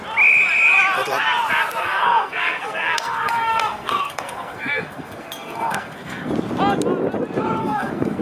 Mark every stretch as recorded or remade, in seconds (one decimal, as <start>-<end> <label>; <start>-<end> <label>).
0.0-1.8 recorded; 1.8-6.3 remade; 6.3-7.6 recorded; 7.6-8.2 remade